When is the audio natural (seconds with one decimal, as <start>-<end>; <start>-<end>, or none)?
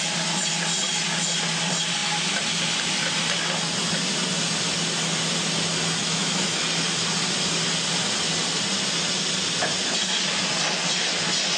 0.0-6.0; 6.6-11.6